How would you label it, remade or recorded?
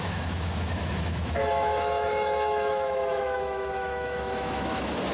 remade